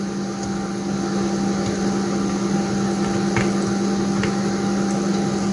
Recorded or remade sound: recorded